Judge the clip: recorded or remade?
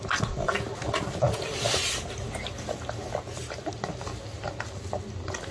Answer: recorded